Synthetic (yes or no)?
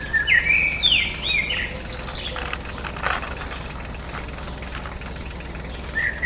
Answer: no